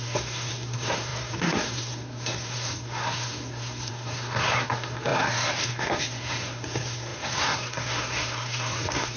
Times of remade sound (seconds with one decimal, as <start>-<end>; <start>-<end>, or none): 0.0-9.2